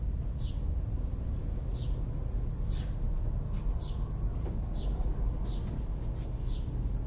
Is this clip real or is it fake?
real